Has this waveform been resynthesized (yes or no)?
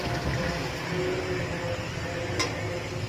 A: no